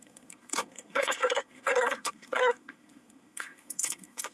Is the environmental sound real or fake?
fake